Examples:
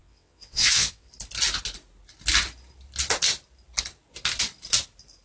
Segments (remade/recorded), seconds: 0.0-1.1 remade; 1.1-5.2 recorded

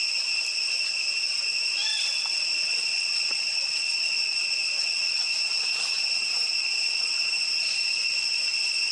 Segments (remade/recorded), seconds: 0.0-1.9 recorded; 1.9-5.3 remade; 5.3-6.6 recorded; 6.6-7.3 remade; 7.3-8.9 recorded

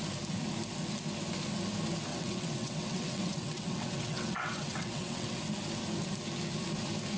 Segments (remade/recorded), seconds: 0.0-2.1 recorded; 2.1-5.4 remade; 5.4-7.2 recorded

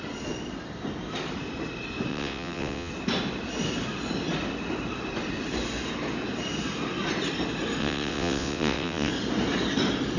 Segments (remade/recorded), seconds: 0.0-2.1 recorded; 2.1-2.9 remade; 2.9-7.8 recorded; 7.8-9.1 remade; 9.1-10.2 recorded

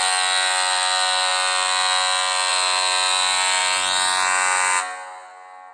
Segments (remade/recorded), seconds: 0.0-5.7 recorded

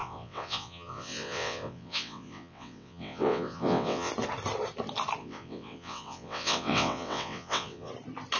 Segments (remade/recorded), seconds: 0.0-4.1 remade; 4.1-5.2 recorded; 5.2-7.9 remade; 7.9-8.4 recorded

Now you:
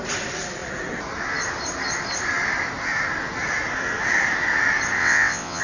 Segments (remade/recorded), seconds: 0.0-5.0 recorded; 5.0-5.6 remade